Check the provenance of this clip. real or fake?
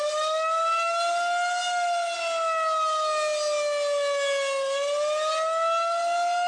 real